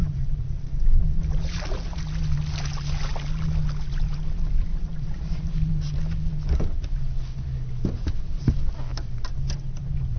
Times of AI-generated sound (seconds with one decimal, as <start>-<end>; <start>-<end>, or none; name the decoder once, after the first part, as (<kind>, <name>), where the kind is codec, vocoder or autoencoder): 0.0-2.0 (vocoder, BigVGAN v2); 4.7-5.7